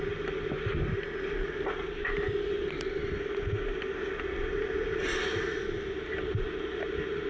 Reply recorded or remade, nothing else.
recorded